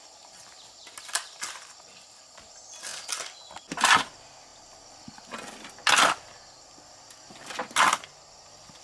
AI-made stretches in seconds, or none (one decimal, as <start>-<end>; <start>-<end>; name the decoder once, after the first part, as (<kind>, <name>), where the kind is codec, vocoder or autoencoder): none